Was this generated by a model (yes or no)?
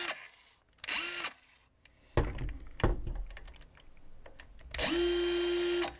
no